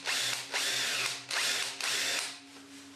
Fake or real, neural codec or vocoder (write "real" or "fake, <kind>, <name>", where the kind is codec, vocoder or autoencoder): real